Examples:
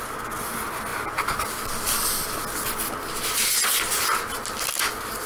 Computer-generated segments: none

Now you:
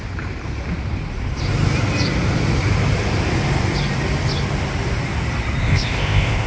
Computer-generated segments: 5.6-6.5 (codec, ZipCodec)

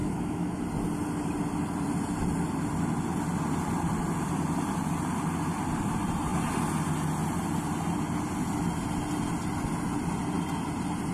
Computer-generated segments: 0.0-0.6 (autoencoder, DAC-VAE)